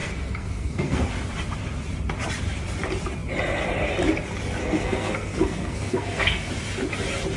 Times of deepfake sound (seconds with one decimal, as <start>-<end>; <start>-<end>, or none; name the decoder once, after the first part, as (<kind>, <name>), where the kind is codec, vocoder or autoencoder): 0.0-1.1 (codec, SNAC); 4.6-6.5

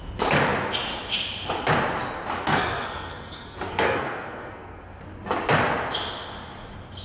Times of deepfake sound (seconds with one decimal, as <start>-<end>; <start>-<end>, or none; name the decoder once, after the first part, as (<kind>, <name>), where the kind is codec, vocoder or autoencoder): 2.4-5.0 (codec, SNAC)

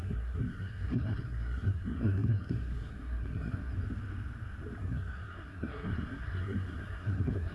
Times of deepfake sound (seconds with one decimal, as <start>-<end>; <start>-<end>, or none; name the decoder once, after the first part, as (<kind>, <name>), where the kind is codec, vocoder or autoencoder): 0.0-3.7 (codec, SNAC); 4.8-7.5

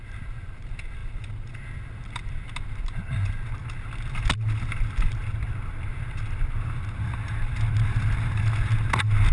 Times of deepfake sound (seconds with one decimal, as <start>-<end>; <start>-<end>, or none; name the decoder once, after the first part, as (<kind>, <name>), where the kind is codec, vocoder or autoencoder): none

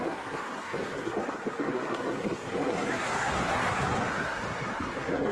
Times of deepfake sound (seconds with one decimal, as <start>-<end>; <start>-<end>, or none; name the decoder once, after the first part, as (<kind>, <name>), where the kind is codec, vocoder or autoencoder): 0.0-5.3 (codec, SNAC)

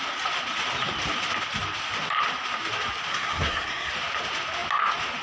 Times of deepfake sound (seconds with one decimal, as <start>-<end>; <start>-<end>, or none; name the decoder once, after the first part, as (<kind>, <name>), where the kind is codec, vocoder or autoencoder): 3.1-3.9 (codec, SNAC)

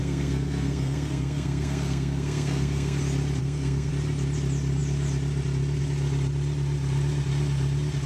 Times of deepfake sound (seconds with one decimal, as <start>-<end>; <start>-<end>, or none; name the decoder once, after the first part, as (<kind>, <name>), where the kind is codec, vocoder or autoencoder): 0.0-3.0 (codec, SNAC); 3.4-3.9